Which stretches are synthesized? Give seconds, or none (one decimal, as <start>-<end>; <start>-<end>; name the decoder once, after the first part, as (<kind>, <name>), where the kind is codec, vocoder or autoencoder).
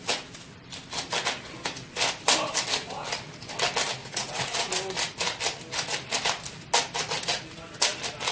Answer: 4.0-4.7 (vocoder, Vocos)